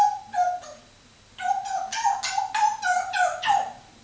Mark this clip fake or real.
real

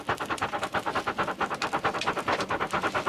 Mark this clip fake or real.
real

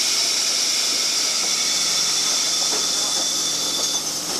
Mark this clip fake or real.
real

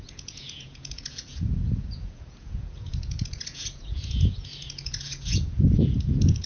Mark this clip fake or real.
fake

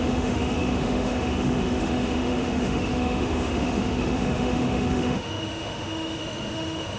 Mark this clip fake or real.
fake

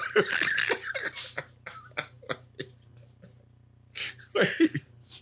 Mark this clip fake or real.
real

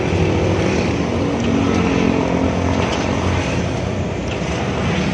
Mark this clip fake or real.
real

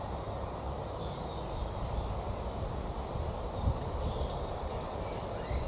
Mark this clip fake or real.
real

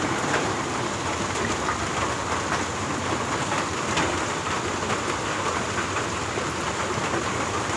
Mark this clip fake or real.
real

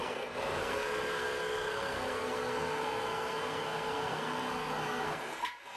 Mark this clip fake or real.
fake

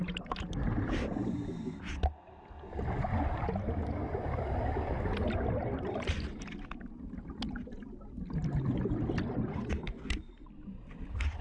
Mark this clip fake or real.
real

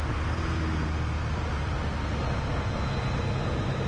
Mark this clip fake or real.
real